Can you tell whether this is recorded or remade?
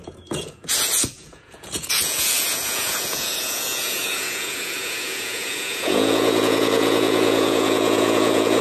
remade